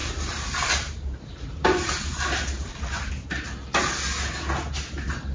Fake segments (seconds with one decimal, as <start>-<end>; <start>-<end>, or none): 0.0-3.1